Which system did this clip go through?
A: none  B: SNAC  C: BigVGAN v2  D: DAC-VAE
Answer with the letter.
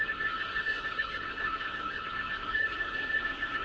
B